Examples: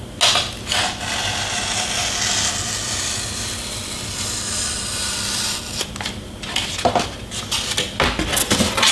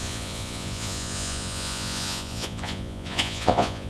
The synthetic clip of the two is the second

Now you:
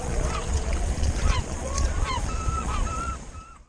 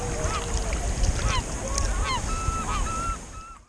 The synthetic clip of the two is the first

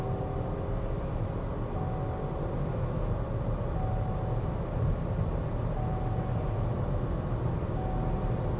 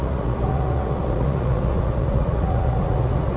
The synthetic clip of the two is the second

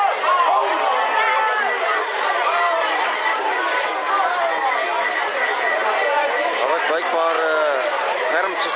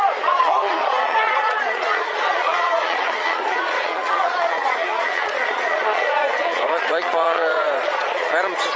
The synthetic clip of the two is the second